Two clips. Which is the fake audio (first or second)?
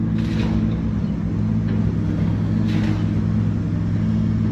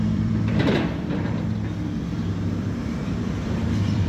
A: second